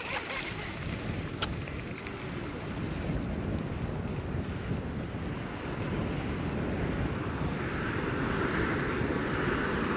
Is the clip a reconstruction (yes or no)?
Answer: no